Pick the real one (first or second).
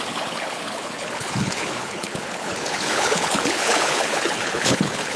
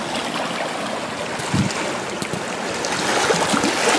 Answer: second